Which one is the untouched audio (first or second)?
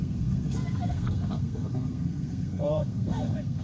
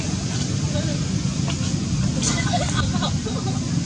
second